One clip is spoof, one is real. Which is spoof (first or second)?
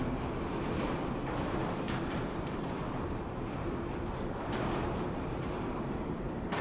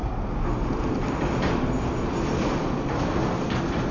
first